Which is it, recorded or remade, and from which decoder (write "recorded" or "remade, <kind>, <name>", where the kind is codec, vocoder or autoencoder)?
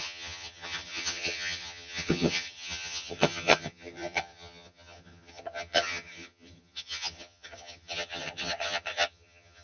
remade, vocoder, HiFi-GAN